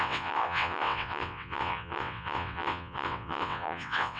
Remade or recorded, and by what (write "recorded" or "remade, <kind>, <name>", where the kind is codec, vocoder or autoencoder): remade, vocoder, WaveNeXt